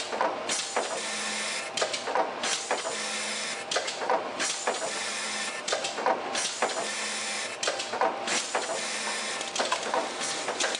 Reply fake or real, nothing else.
real